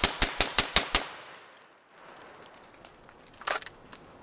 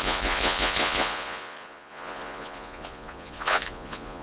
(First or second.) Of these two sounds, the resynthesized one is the second